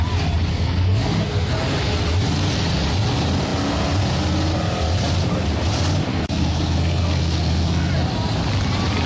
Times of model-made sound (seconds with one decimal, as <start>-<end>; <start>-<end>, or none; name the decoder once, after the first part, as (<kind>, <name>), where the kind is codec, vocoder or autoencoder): 0.5-1.5 (codec, SNAC); 6.1-7.9